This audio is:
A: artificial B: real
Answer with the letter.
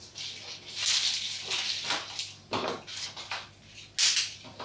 B